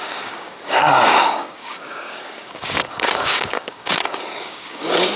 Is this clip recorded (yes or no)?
no